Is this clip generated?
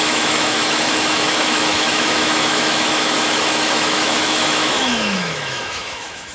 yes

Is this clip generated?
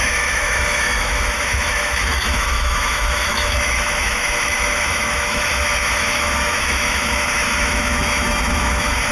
yes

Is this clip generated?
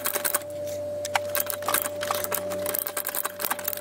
no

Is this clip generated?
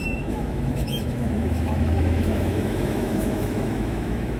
yes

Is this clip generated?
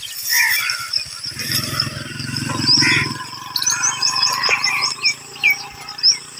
no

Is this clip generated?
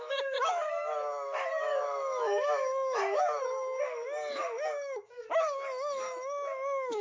yes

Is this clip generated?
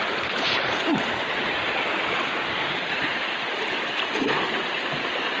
no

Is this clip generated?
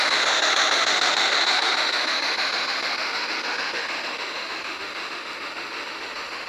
yes